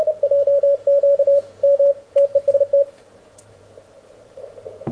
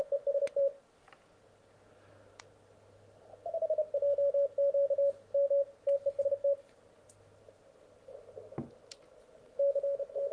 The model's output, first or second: first